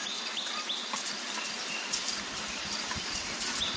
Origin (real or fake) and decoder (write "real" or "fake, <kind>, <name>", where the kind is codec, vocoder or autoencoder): real